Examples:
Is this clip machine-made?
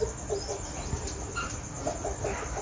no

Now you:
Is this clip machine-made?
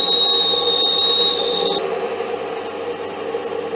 no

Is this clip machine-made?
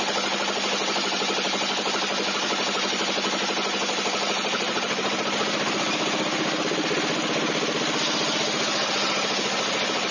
no